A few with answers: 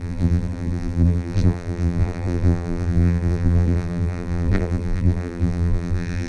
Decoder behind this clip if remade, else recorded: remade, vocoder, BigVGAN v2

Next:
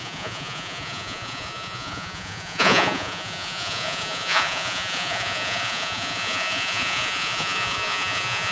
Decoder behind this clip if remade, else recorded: remade, vocoder, Vocos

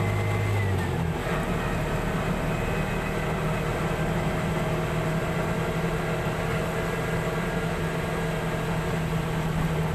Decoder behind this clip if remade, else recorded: recorded